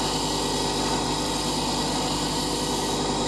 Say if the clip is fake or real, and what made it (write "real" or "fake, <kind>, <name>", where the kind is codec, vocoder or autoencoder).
real